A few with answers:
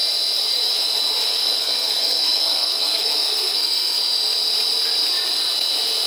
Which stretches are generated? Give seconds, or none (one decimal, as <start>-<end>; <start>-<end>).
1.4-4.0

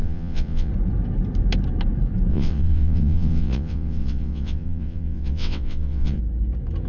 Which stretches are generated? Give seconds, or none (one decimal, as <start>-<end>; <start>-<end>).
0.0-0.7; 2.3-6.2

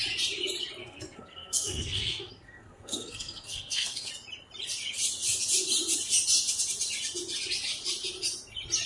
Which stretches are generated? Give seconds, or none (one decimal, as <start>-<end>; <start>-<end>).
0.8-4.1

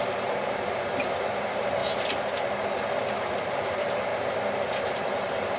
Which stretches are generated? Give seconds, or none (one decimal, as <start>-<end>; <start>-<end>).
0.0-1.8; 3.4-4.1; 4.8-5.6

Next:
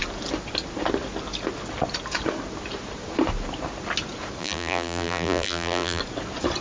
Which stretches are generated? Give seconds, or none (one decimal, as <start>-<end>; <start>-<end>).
4.4-6.0

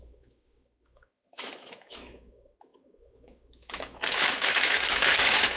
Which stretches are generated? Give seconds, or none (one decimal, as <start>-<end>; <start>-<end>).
0.0-5.6